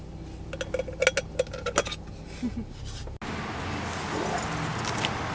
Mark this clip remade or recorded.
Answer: recorded